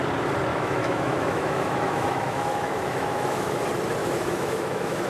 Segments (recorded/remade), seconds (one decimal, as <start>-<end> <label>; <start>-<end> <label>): 0.0-0.5 recorded; 0.5-3.6 remade; 3.6-4.0 recorded; 4.0-5.1 remade